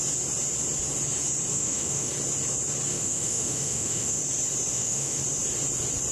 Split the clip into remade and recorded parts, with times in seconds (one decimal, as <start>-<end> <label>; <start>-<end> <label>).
0.0-1.5 recorded; 1.5-2.1 remade; 2.1-2.9 recorded; 2.9-4.2 remade; 4.2-4.7 recorded; 4.7-5.2 remade; 5.2-6.1 recorded